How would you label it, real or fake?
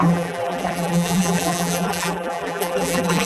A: fake